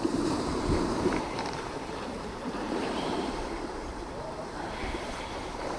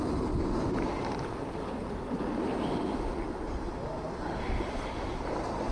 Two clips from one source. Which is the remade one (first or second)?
first